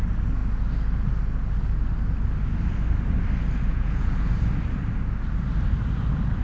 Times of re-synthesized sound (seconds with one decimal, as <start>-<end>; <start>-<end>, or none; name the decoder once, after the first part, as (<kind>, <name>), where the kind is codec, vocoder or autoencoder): 3.7-4.3 (vocoder, Vocos)

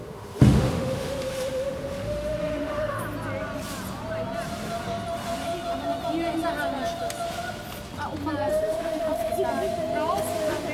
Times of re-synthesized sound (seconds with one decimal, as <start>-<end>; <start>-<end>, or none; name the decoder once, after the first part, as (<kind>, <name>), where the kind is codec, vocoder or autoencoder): 0.0-3.0 (autoencoder, DAC-VAE); 8.5-9.3

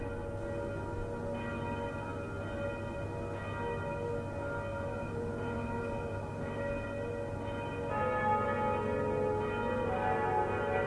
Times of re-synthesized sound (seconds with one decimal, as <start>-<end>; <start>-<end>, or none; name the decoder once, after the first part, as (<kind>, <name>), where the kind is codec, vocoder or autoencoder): 4.7-6.6 (vocoder, Vocos)

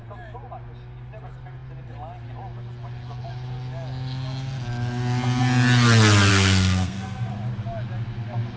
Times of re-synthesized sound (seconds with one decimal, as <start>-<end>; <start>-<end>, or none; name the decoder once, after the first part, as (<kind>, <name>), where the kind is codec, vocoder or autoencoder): 6.3-7.3 (codec, SNAC)

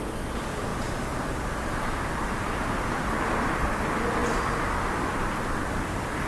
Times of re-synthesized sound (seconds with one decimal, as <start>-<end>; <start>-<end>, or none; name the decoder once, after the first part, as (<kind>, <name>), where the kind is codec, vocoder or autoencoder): 0.7-2.0 (vocoder, BigVGAN v2)

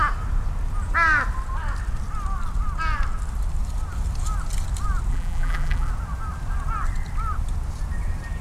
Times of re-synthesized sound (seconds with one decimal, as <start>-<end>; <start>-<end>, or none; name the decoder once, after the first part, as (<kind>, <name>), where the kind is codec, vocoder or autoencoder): 5.1-5.9 (vocoder, BigVGAN v2)